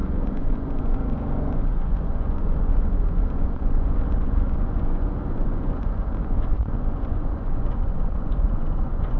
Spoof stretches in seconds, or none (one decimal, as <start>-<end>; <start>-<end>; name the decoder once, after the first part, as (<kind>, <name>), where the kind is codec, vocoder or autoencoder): 0.0-9.2 (vocoder, Vocos)